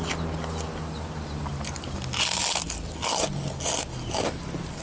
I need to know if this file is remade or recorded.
recorded